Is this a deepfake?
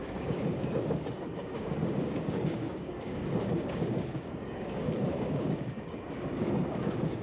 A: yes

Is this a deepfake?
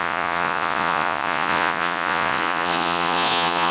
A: yes